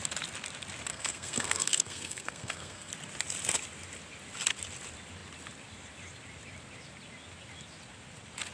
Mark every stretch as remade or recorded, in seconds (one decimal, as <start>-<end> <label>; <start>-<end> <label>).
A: 0.0-0.9 recorded; 0.9-2.9 remade; 2.9-8.5 recorded